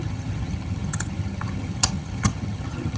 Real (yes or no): no